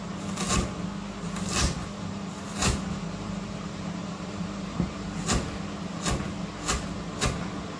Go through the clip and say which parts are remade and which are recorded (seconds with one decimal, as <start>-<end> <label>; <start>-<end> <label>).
0.0-1.8 recorded; 1.8-5.2 remade; 5.2-7.8 recorded